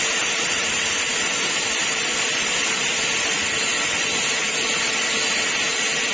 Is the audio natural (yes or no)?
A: yes